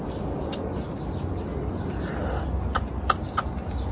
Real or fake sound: real